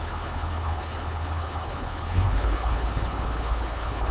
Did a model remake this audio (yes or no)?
yes